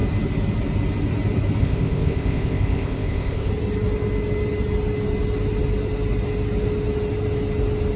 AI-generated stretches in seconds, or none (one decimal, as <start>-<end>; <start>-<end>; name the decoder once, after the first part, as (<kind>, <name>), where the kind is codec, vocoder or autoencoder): 1.6-3.5 (codec, ZipCodec)